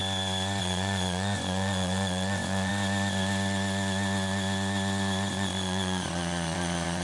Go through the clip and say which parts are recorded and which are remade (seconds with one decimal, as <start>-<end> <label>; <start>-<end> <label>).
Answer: 0.0-0.6 recorded; 0.6-2.7 remade; 2.7-5.3 recorded; 5.3-7.0 remade